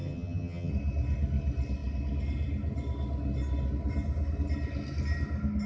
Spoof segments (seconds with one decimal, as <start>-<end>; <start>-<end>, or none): 0.0-0.7